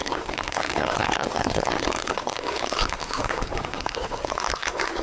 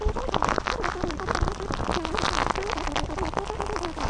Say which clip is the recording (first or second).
second